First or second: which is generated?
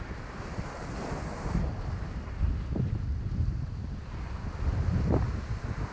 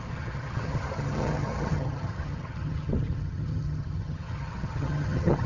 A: second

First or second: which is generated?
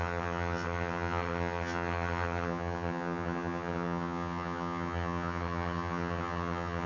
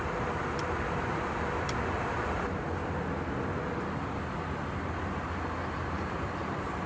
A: first